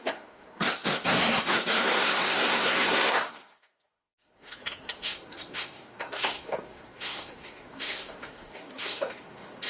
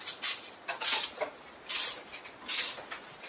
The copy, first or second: first